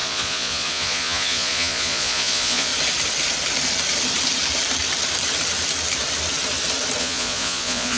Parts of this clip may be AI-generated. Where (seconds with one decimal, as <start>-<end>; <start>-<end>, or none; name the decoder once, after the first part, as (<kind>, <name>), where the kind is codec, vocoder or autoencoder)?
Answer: 0.0-2.7 (vocoder, Vocos); 7.0-8.0